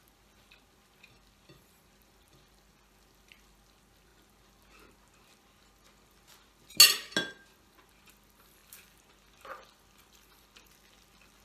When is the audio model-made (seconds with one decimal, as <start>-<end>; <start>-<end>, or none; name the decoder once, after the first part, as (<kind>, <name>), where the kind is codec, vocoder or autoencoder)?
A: none

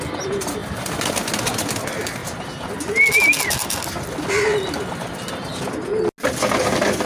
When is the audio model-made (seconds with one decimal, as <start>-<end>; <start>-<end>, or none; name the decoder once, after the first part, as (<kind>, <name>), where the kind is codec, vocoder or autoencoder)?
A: none

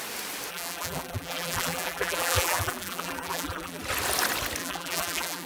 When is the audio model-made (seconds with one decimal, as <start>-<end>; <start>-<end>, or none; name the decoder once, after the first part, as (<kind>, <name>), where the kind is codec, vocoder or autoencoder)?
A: 0.5-3.8 (vocoder, BigVGAN v2); 4.6-5.5

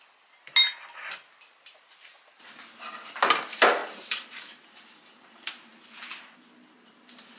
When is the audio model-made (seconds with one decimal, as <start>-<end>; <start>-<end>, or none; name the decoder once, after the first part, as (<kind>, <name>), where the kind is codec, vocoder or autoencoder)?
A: 3.8-5.5 (vocoder, BigVGAN v2)

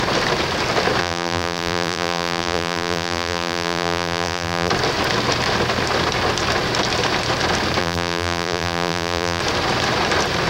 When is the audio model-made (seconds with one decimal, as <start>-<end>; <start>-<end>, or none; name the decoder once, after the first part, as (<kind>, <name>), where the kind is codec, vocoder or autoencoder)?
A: 1.0-4.7 (vocoder, BigVGAN v2); 7.8-9.4

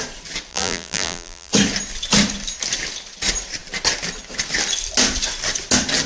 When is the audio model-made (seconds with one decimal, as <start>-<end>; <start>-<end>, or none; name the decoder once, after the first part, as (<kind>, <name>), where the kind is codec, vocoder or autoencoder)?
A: 0.5-1.5 (vocoder, BigVGAN v2)